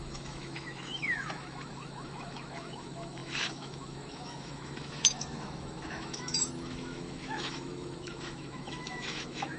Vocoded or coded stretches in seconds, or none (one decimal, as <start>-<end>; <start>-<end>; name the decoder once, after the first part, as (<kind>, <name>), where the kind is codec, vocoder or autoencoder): 0.0-9.6 (autoencoder, DAC-VAE)